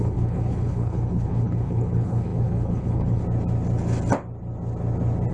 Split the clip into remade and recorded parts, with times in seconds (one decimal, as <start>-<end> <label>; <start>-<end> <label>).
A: 0.0-3.2 remade; 3.2-5.3 recorded